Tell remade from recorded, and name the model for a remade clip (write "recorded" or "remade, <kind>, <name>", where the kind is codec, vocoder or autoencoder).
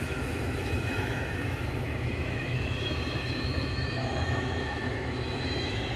remade, autoencoder, DAC-VAE